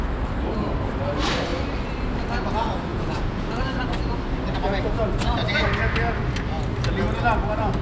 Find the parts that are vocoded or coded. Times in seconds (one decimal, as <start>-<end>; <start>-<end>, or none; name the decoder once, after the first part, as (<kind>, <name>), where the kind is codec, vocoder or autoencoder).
2.9-3.6 (vocoder, Vocos)